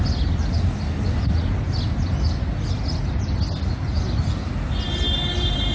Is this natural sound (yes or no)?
yes